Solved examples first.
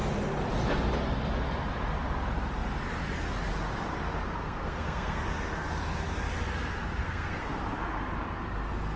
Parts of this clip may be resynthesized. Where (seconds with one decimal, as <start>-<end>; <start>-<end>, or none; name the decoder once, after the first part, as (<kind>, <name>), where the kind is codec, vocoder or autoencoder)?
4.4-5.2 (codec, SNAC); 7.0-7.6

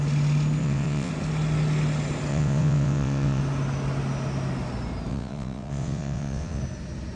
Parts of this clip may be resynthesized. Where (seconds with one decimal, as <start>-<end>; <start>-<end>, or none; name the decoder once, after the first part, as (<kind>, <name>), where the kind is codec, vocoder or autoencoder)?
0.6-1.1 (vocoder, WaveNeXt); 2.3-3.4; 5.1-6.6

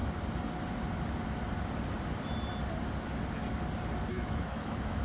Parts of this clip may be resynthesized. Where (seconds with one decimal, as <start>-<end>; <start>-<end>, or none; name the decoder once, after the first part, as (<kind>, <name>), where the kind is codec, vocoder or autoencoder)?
4.1-5.0 (autoencoder, DAC-VAE)

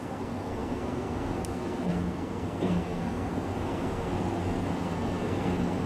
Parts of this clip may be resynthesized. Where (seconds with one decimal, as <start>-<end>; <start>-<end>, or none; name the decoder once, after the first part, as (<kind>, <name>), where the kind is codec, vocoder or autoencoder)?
0.0-5.9 (codec, SNAC)

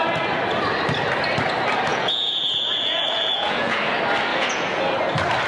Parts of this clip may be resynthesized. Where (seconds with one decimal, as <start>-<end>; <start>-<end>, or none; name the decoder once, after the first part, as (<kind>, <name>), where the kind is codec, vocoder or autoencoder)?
1.9-3.8 (vocoder, Vocos); 4.3-4.8